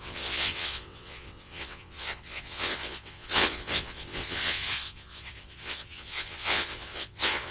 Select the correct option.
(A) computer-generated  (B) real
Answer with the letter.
A